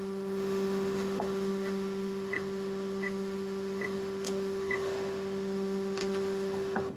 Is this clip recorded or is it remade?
remade